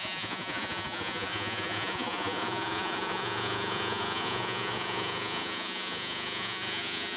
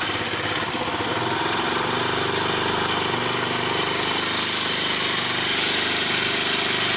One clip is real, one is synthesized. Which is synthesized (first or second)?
first